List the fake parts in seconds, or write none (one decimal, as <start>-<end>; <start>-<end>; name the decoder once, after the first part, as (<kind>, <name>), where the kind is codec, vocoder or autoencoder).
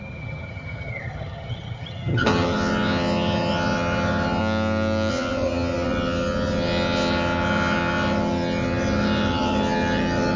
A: 0.0-4.4 (vocoder, HiFi-GAN); 5.1-10.4